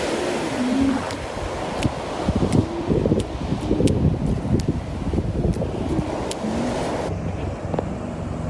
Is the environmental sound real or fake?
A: real